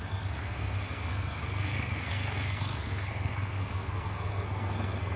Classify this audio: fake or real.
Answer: fake